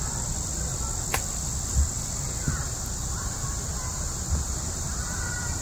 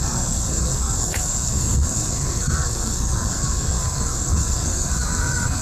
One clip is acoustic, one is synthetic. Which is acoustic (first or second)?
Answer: first